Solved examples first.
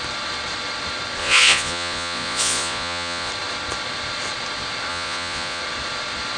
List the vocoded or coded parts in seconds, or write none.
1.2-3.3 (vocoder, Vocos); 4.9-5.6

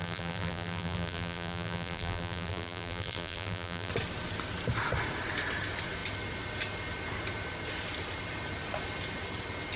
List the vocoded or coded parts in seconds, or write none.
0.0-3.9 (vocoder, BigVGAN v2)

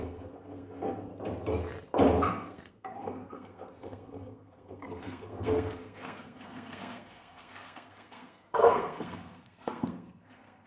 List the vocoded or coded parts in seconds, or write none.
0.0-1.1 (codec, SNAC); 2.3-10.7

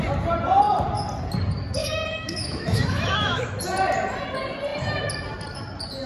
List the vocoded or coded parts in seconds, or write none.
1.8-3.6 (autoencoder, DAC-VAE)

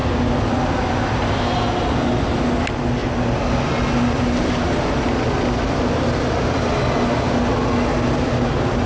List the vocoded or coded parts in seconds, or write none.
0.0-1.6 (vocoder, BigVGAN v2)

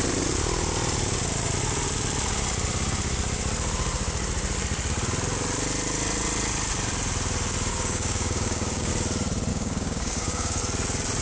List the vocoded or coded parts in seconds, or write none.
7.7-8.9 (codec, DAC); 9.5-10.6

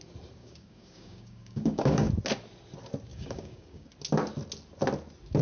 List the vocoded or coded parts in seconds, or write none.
0.4-2.1 (codec, DAC); 3.1-3.9

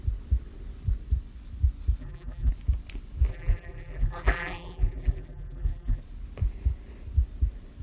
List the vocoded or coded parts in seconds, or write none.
2.0-2.5 (vocoder, BigVGAN v2); 3.3-6.0